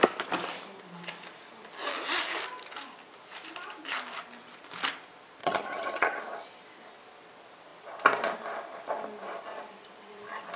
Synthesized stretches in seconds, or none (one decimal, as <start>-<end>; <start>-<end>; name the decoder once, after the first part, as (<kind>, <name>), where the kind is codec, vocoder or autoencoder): 5.4-6.2 (vocoder, HiFi-GAN)